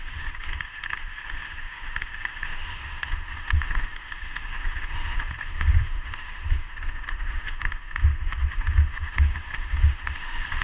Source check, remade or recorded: remade